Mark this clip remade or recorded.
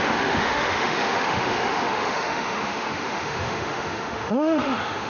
remade